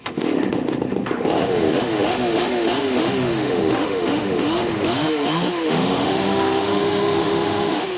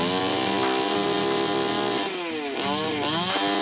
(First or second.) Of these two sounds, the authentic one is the second